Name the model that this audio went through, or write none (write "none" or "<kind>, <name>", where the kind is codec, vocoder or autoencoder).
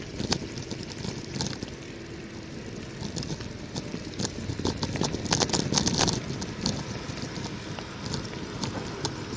vocoder, BigVGAN v2